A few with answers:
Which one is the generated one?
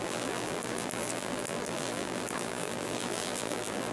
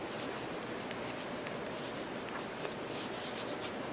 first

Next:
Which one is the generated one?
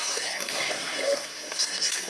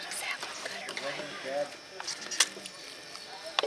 first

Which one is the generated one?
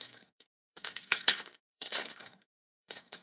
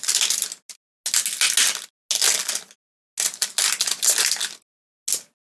first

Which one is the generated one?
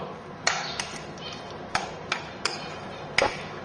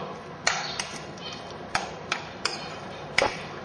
second